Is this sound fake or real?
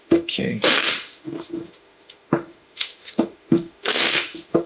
fake